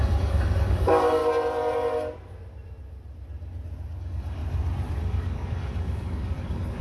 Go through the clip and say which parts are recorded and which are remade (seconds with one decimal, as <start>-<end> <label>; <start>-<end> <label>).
0.0-1.2 remade; 1.2-4.0 recorded; 4.0-4.4 remade; 4.4-5.0 recorded; 5.0-6.8 remade